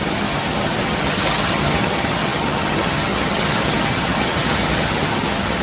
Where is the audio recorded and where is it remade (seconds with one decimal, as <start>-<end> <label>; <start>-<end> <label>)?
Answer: 0.0-5.6 remade

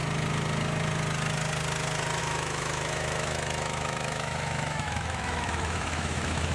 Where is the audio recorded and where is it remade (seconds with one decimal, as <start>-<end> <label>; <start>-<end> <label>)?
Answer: 0.0-2.2 recorded; 2.2-6.5 remade